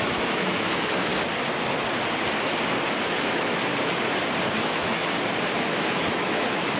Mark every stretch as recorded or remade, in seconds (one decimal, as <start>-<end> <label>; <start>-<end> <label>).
0.0-1.1 remade; 1.1-3.0 recorded; 3.0-3.7 remade; 3.7-4.6 recorded; 4.6-5.0 remade; 5.0-5.7 recorded; 5.7-6.8 remade